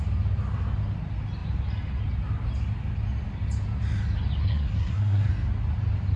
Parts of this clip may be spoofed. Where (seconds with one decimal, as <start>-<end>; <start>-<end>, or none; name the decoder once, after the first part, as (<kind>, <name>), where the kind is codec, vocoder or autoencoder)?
4.4-5.3 (codec, SNAC)